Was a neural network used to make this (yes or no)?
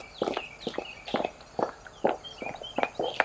no